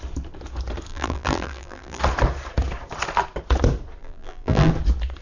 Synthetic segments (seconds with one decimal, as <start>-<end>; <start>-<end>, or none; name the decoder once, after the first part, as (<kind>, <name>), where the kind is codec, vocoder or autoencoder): 0.9-2.0 (vocoder, BigVGAN v2); 4.0-4.7